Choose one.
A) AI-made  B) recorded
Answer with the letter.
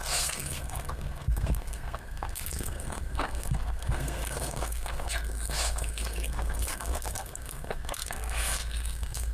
A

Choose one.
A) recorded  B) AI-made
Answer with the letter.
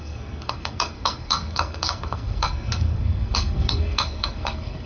B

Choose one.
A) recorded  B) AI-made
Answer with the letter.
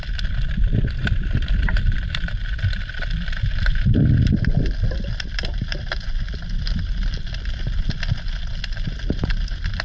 A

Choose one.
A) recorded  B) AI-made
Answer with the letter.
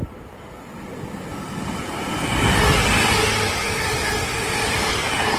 A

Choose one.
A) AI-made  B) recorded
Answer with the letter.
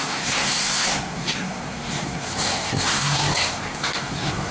A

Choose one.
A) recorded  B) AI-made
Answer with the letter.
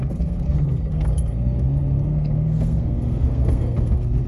B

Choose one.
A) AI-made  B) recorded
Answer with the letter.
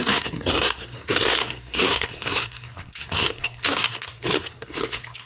A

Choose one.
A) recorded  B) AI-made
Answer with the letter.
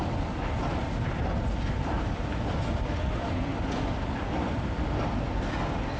A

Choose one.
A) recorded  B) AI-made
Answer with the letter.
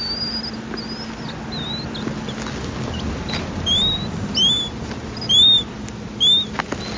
A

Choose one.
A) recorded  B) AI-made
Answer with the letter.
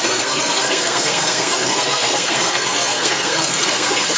B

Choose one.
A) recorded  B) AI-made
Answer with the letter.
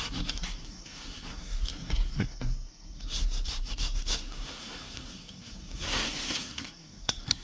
B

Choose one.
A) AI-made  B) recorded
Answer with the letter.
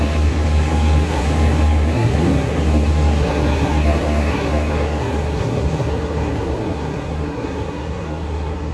A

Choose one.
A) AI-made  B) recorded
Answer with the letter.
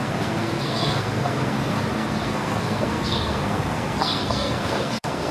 A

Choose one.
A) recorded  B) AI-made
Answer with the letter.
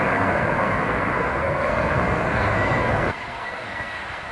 B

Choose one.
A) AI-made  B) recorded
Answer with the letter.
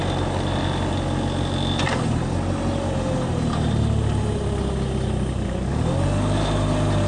B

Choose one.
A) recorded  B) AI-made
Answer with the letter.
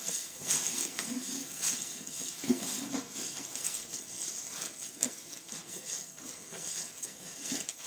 B